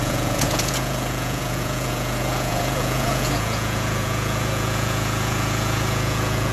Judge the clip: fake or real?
fake